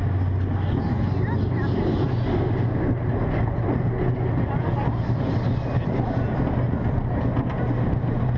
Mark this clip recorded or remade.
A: recorded